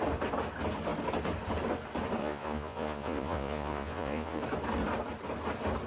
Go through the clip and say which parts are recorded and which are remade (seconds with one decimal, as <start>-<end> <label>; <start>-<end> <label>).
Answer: 0.0-2.2 recorded; 2.2-4.4 remade; 4.4-5.9 recorded